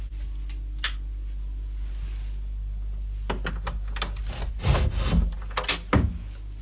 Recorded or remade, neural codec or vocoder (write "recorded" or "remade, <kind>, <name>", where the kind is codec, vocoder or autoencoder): recorded